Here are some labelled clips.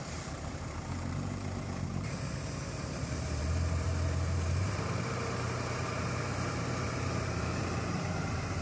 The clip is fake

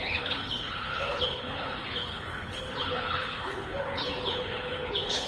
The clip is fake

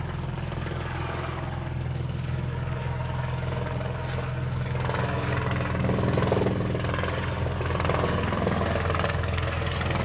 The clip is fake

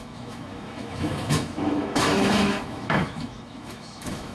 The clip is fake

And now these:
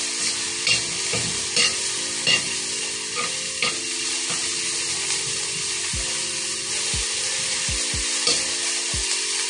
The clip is real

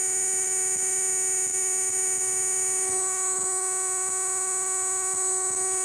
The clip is real